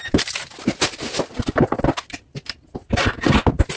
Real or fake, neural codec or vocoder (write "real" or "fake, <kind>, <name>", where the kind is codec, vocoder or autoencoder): real